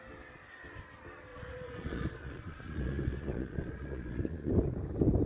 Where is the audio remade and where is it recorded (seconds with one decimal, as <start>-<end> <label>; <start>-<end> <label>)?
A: 0.0-1.3 recorded; 1.3-4.5 remade; 4.5-5.3 recorded